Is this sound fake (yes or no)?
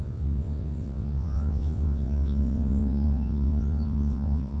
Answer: yes